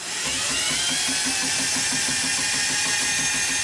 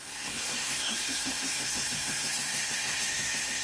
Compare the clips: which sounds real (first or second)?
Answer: first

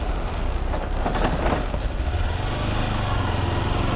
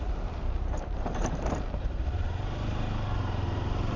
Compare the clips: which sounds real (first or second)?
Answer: first